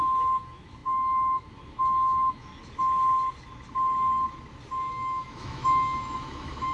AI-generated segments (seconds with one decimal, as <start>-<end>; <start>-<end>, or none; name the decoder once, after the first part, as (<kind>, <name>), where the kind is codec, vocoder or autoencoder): 0.0-2.5 (autoencoder, DAC-VAE); 4.9-6.7